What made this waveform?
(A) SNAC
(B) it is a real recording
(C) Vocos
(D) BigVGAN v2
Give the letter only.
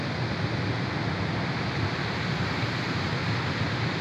B